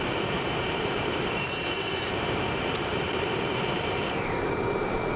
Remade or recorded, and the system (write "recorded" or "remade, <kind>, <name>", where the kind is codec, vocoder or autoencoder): remade, vocoder, BigVGAN v2